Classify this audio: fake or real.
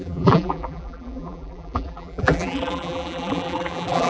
fake